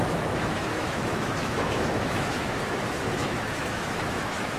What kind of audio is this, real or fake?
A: fake